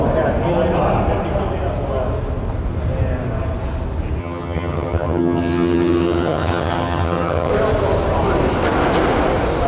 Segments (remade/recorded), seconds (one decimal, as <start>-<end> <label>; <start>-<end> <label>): 0.0-4.2 recorded; 4.2-7.5 remade; 7.5-9.7 recorded